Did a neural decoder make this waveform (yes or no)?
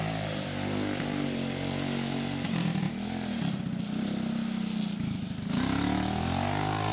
no